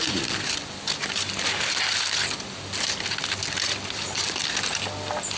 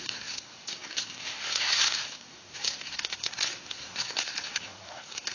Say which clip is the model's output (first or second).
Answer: second